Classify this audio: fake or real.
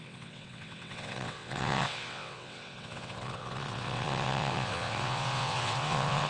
fake